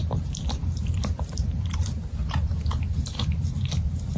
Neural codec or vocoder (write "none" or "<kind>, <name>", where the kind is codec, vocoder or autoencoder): vocoder, BigVGAN v2